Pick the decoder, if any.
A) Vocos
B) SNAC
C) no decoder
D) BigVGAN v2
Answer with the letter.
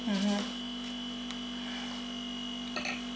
C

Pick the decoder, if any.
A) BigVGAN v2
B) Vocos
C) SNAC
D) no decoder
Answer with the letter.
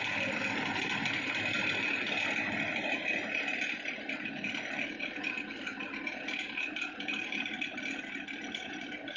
A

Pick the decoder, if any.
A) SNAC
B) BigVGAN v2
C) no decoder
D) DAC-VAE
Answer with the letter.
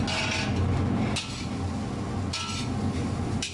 C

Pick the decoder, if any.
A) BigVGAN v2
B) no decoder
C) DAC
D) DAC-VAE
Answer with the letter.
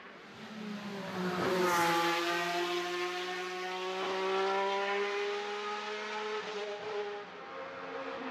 B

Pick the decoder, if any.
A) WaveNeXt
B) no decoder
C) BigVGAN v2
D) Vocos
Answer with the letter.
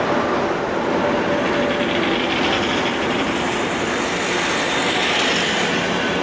B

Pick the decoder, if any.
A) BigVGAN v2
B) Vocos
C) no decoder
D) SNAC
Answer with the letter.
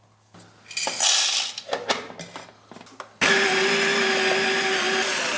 C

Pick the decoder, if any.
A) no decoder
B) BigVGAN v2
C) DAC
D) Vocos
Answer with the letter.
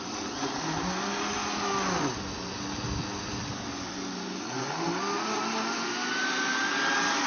A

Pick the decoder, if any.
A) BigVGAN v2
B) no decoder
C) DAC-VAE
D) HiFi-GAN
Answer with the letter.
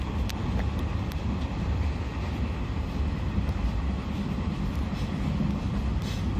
B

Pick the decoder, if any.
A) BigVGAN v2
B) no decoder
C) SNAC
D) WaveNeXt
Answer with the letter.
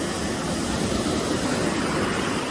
B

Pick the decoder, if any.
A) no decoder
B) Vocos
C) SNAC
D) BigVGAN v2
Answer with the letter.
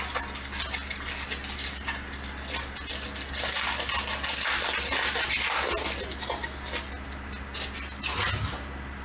A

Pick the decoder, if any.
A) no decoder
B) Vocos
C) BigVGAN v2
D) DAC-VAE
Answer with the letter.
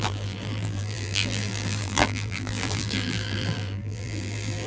C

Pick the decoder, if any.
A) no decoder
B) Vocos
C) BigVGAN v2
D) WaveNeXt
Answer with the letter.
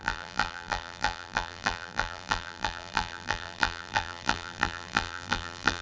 C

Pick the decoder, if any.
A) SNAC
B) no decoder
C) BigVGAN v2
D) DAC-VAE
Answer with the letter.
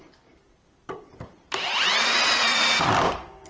C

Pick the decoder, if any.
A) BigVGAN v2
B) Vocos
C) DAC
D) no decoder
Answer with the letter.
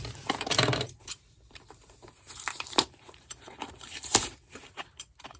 A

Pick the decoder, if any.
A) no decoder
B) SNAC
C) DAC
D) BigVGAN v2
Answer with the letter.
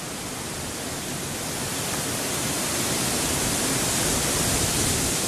A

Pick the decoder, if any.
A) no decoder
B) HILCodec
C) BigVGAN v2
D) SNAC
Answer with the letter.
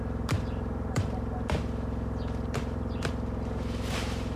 C